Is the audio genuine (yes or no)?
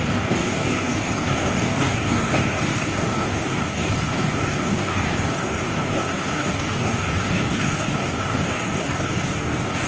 no